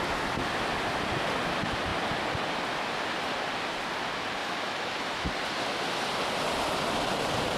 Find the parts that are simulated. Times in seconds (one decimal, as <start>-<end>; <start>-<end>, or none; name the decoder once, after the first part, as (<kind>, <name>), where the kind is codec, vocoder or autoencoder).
4.4-5.3 (autoencoder, DAC-VAE)